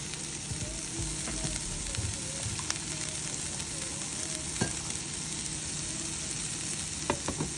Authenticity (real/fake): real